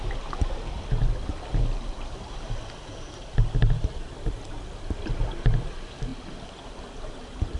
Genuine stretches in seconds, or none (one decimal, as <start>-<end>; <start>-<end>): 0.0-7.6